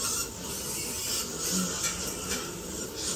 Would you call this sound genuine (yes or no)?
yes